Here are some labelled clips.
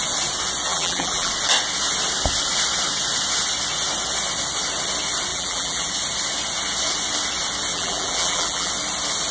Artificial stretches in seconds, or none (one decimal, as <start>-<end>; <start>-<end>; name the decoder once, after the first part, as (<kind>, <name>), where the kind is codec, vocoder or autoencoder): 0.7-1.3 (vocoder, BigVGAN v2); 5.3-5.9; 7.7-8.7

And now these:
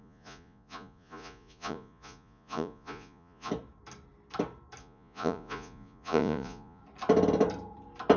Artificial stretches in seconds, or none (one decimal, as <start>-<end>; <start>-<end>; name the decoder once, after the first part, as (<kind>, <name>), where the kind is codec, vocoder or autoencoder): 0.0-3.5 (vocoder, Vocos); 4.8-6.8

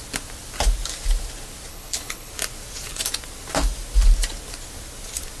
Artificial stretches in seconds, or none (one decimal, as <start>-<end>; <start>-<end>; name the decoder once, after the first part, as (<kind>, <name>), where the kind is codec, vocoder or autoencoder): 1.7-2.3 (codec, HILCodec)

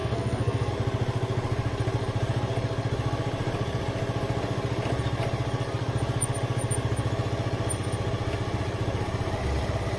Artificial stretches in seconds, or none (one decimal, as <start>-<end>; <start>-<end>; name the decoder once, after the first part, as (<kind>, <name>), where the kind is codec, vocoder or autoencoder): 0.0-0.7 (codec, SNAC)

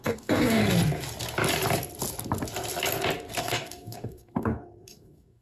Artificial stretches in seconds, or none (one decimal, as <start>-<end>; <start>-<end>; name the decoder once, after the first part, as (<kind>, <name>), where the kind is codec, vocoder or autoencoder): 0.0-0.6 (codec, DAC); 3.4-5.4